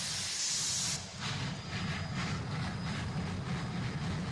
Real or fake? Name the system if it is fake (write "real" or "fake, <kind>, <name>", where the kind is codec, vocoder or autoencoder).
real